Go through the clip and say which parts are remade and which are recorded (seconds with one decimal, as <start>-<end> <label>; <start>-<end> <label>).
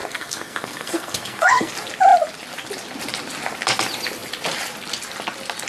0.0-1.7 remade; 1.7-5.7 recorded